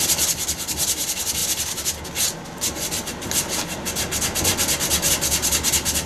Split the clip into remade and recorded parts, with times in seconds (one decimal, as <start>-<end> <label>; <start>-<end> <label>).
0.0-6.1 recorded